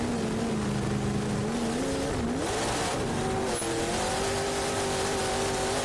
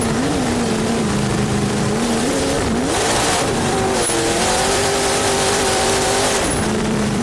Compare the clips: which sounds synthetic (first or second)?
second